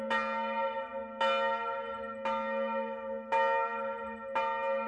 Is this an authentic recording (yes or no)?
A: yes